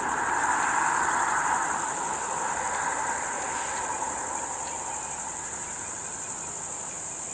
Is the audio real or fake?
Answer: real